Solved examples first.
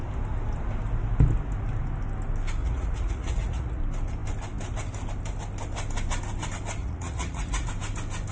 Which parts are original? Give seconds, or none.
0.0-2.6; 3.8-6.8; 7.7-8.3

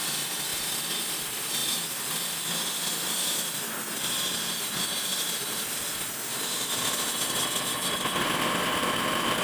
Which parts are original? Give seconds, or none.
0.0-9.4

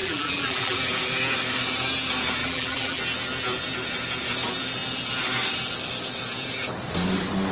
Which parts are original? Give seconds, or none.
0.8-2.4; 3.0-7.5